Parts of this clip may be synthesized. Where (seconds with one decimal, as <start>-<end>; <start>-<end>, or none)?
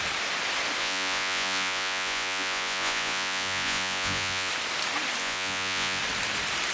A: 0.8-4.5; 5.2-6.0